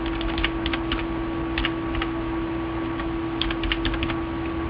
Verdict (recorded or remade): recorded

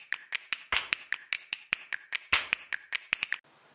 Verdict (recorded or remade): recorded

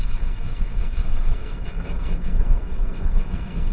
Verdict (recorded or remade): remade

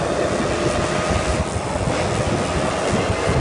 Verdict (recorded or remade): recorded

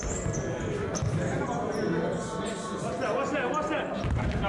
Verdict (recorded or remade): recorded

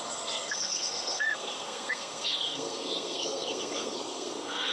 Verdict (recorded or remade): remade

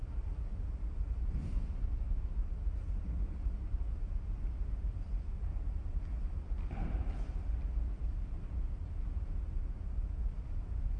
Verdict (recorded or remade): recorded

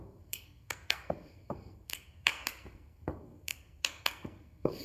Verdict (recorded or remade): remade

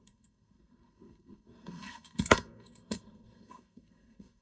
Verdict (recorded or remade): remade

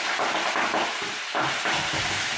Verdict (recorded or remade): recorded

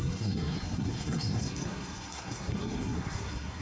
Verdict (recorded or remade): remade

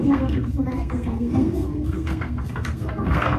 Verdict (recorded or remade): remade